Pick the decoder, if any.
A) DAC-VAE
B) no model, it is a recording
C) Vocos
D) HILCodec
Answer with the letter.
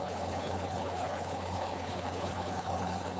D